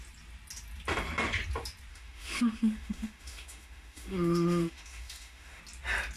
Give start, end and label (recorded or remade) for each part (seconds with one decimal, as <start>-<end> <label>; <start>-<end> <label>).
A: 0.0-1.9 recorded; 1.9-5.6 remade; 5.6-6.2 recorded